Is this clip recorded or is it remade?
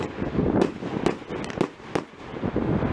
recorded